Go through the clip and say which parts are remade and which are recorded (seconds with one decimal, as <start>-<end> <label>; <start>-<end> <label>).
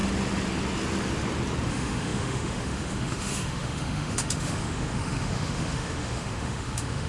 0.0-1.7 recorded; 1.7-7.1 remade